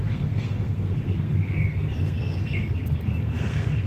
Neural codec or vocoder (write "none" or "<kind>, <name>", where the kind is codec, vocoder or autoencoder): codec, SNAC